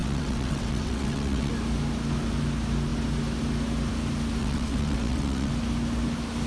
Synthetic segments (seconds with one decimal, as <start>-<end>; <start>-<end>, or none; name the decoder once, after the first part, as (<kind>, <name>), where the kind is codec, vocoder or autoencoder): 0.0-1.5 (vocoder, WaveNeXt); 4.4-5.5